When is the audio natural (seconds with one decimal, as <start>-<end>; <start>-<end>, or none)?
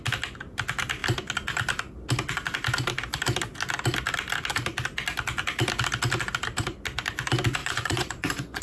0.0-7.6